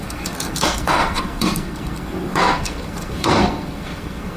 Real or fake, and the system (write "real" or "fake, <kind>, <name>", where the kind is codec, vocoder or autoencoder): fake, codec, SNAC